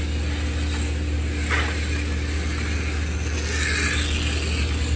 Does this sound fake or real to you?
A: real